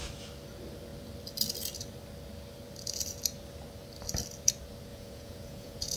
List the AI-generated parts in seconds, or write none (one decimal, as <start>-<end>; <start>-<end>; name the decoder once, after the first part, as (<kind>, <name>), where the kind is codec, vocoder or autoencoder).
4.9-6.0 (vocoder, Vocos)

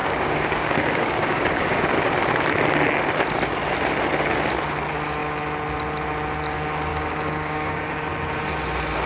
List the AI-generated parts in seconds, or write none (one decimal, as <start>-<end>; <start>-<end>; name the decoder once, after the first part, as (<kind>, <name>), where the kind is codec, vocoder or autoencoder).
0.0-1.9 (codec, DAC); 6.9-7.8

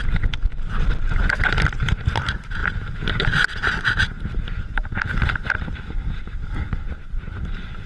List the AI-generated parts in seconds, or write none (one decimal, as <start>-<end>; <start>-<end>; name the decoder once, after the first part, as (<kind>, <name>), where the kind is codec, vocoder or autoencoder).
none

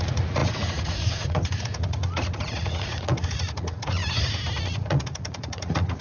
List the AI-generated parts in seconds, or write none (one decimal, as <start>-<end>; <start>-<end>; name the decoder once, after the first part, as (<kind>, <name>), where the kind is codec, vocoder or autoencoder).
0.0-4.0 (vocoder, Vocos); 4.6-6.0

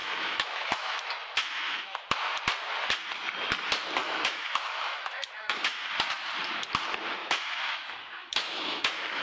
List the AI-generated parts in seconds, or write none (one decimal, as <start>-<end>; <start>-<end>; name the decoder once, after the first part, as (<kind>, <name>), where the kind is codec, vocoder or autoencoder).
0.0-2.0 (autoencoder, DAC-VAE); 4.0-5.9; 7.2-9.2